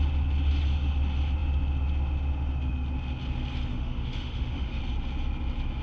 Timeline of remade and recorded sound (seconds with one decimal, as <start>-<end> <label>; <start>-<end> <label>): 0.0-3.7 recorded; 3.7-4.8 remade; 4.8-5.8 recorded